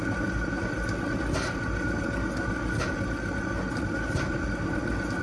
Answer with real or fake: real